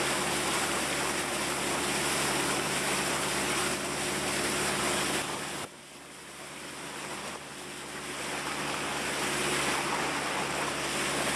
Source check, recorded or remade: recorded